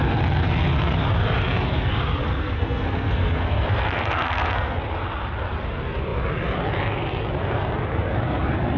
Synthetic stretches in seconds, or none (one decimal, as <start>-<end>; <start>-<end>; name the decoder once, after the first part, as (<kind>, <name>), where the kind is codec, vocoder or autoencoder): 2.2-4.8 (codec, SNAC)